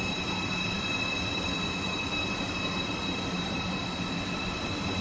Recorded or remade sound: remade